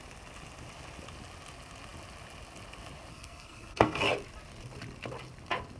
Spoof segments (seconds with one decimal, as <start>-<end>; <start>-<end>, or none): 3.1-4.0